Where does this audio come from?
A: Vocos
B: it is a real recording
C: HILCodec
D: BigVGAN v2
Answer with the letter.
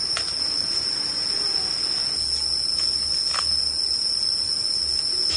B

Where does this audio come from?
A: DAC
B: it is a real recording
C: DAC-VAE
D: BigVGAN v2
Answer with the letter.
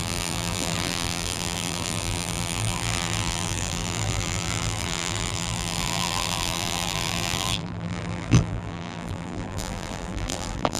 D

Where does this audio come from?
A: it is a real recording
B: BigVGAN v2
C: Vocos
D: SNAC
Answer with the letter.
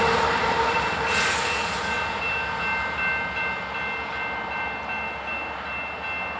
A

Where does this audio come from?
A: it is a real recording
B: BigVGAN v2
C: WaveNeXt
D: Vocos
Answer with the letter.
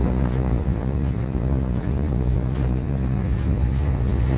D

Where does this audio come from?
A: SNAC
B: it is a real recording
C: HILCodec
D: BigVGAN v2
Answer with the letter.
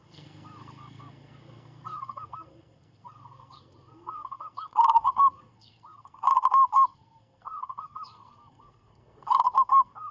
A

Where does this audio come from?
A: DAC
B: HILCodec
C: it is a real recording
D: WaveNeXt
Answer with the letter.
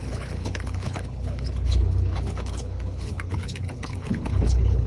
B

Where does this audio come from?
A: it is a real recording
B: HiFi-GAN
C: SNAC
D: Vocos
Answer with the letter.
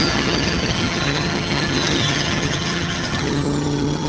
B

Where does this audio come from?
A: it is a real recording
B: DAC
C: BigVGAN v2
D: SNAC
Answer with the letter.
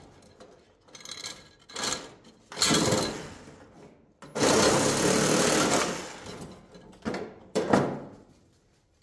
A